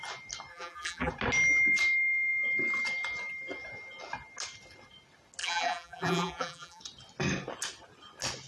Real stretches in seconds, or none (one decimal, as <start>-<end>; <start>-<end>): 0.0-0.5; 1.1-5.4; 6.8-8.5